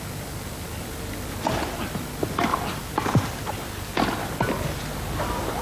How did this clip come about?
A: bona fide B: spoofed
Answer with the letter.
A